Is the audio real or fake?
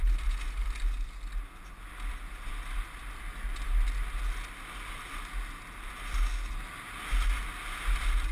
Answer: real